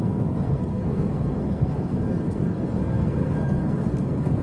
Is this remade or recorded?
remade